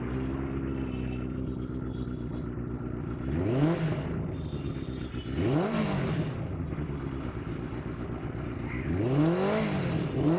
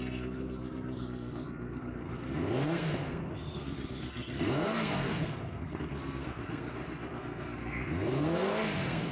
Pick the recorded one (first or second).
first